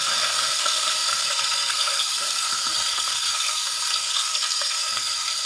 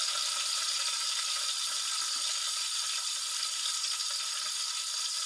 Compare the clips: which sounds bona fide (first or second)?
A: second